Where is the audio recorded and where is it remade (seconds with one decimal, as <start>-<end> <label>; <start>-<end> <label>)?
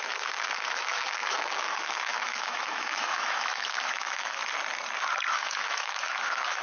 0.0-4.4 remade; 4.4-5.3 recorded; 5.3-6.6 remade